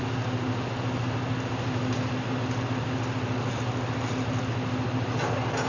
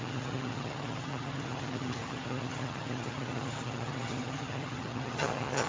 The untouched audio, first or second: first